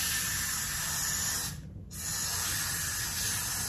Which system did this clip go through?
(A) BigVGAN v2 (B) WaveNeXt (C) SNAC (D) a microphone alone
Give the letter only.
D